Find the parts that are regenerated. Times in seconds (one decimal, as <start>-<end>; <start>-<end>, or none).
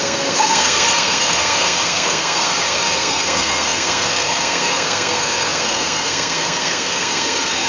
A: 0.0-7.7